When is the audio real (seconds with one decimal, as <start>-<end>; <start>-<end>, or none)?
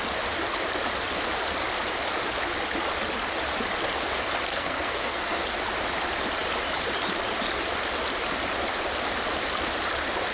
0.0-4.5; 5.4-10.3